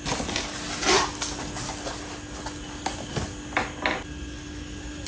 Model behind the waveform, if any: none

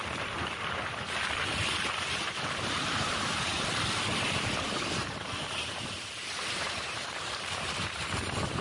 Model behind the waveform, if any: vocoder, BigVGAN v2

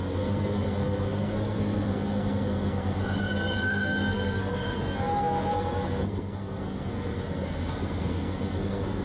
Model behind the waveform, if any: codec, SNAC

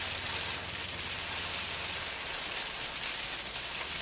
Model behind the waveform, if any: none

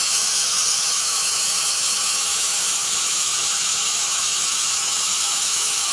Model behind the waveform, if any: autoencoder, DAC-VAE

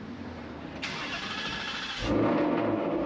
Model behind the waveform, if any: none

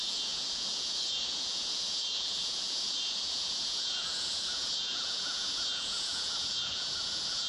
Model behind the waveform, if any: vocoder, Vocos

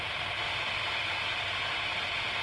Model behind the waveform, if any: none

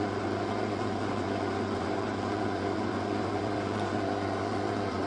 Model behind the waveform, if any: vocoder, Vocos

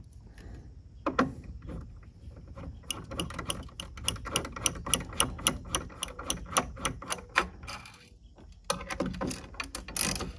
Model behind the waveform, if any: none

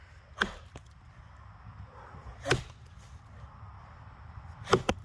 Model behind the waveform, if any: none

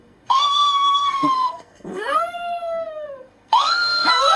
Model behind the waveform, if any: codec, SNAC